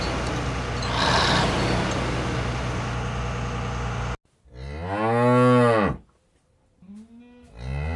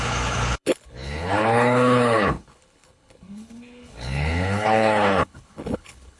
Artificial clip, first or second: second